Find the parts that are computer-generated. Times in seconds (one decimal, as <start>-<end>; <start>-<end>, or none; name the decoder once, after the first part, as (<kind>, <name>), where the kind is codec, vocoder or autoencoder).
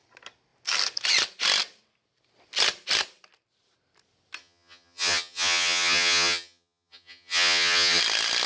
4.4-8.0 (vocoder, HiFi-GAN)